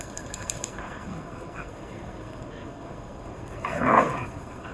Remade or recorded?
remade